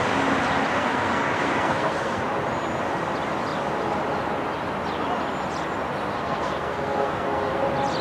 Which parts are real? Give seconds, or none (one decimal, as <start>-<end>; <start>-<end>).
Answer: 0.0-0.7; 2.2-6.1; 7.6-8.0